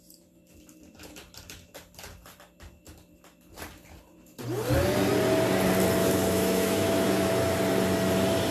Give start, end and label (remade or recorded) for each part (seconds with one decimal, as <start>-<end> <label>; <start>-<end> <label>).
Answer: 0.0-6.0 recorded; 6.0-7.3 remade; 7.3-8.5 recorded